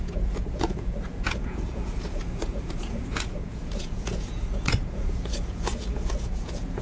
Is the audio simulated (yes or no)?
yes